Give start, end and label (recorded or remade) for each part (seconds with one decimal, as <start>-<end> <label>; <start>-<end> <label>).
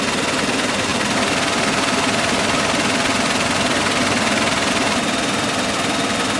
0.0-6.4 recorded